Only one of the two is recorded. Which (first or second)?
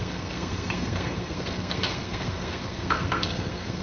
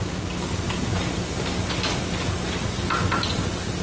second